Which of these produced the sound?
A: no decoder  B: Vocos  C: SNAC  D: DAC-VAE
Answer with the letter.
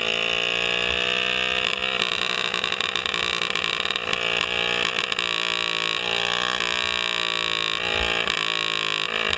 A